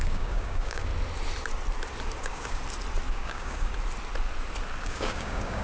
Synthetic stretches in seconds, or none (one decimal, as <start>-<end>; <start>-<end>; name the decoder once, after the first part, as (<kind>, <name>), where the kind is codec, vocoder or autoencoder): 0.0-0.9 (codec, DAC); 2.2-2.6; 3.1-3.7; 4.8-5.6